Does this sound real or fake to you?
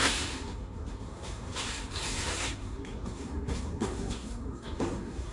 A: fake